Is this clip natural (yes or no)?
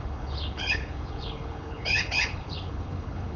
no